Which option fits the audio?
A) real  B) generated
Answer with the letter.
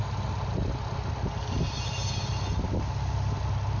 A